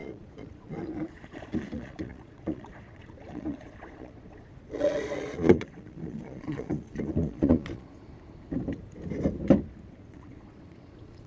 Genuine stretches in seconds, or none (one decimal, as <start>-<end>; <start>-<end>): 8.1-9.9